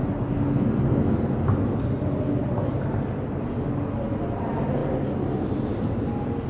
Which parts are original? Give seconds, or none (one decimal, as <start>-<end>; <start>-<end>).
0.0-6.5